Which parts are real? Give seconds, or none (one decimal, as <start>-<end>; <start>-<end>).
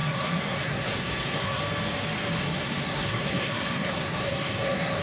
1.6-2.4